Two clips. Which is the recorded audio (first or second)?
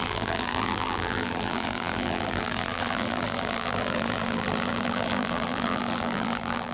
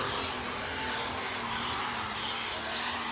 second